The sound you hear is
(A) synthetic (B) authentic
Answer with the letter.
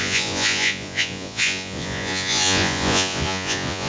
A